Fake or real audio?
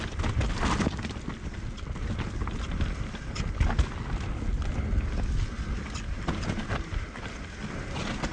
real